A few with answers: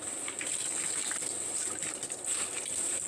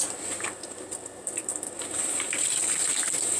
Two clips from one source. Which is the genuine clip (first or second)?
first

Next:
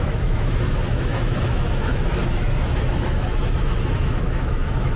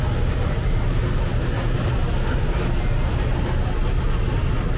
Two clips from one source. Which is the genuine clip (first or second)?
second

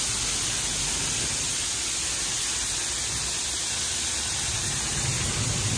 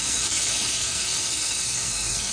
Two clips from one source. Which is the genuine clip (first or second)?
first